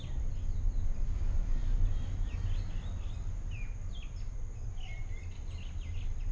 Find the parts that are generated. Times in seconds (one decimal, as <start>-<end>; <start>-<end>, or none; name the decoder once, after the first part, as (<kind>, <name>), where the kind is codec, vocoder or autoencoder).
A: none